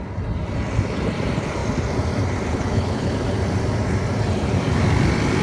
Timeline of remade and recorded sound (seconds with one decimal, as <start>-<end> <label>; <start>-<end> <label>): 0.0-2.5 recorded; 2.5-3.1 remade; 3.1-5.4 recorded